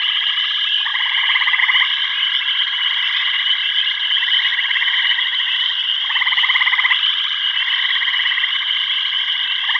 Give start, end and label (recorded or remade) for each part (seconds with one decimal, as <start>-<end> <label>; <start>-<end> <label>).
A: 0.0-0.9 recorded; 0.9-1.6 remade; 1.6-9.8 recorded